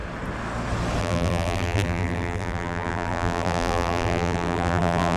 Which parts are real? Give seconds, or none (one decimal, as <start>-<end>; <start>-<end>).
0.0-1.0